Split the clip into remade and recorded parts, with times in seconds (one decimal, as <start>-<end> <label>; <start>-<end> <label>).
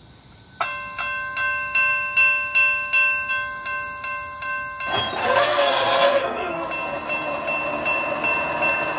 0.0-5.2 recorded; 5.2-6.7 remade; 6.7-9.0 recorded